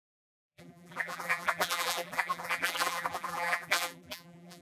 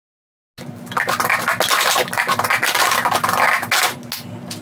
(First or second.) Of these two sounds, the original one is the second